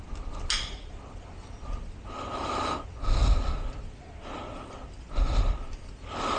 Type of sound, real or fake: real